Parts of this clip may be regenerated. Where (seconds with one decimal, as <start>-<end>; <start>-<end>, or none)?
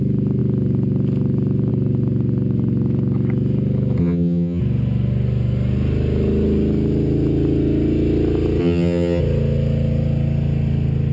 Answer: 4.0-4.6; 8.6-9.2